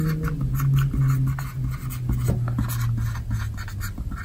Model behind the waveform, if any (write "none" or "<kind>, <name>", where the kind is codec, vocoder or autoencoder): none